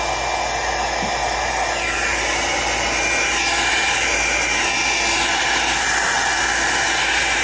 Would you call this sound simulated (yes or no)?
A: no